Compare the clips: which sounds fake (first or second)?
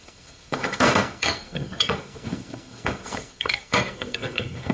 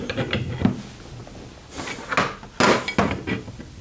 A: first